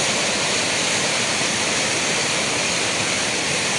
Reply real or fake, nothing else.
fake